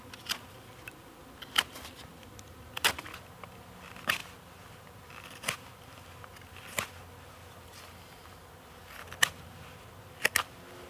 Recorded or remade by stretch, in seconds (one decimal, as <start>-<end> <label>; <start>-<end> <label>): 0.0-10.9 recorded